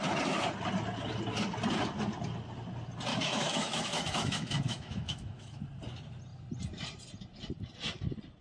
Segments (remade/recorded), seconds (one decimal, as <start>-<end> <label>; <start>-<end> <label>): 0.0-3.1 recorded; 3.1-5.6 remade; 5.6-8.4 recorded